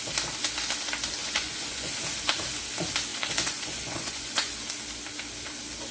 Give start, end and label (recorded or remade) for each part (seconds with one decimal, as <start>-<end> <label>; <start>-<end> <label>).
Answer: 0.0-1.2 recorded; 1.2-2.0 remade; 2.0-3.1 recorded; 3.1-4.6 remade; 4.6-5.9 recorded